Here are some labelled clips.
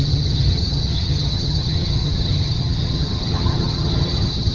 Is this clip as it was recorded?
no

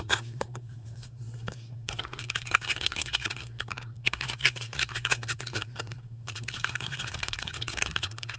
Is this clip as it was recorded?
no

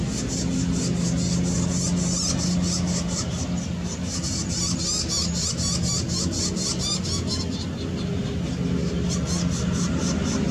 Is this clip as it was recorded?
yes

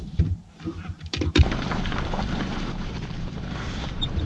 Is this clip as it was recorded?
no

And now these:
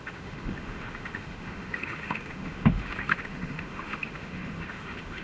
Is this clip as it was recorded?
no